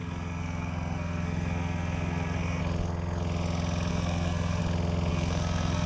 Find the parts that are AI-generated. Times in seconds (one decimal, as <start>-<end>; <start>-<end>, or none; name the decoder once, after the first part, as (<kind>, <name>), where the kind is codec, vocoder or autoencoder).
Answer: 0.0-2.6 (codec, SNAC); 3.9-4.6; 5.1-5.9